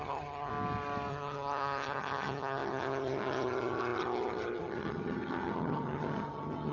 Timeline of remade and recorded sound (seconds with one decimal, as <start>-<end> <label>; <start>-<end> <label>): 0.0-0.5 remade; 0.5-1.1 recorded; 1.1-6.7 remade